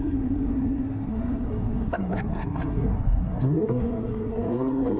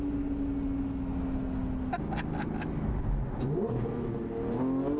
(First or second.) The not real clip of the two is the first